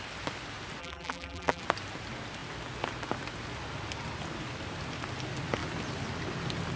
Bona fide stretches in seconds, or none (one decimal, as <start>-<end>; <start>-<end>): 0.0-0.8; 1.6-6.8